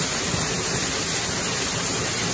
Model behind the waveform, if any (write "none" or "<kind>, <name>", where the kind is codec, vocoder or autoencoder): none